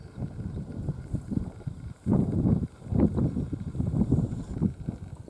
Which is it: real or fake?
fake